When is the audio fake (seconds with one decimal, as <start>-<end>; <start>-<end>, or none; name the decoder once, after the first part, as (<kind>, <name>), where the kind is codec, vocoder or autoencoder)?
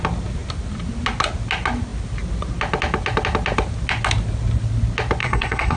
5.2-5.8 (codec, SNAC)